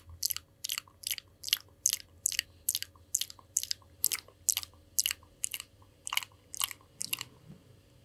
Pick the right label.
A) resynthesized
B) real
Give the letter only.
B